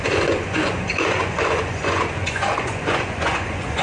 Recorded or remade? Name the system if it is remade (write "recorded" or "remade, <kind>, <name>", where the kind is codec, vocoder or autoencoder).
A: remade, vocoder, Vocos